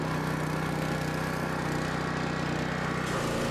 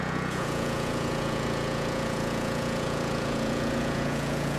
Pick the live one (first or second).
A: first